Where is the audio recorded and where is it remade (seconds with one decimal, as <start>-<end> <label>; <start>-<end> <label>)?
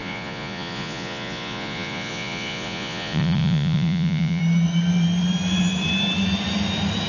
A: 0.0-4.4 remade; 4.4-7.1 recorded